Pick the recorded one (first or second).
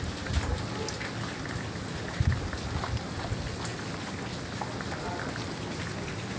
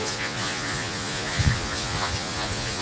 first